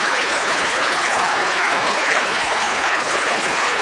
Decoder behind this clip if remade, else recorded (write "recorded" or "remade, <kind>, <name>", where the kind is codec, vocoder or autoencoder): remade, codec, HILCodec